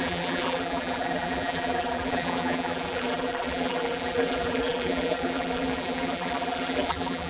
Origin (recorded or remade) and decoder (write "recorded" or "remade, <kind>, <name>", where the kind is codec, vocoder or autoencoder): remade, vocoder, BigVGAN v2